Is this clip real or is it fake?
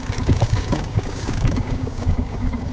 fake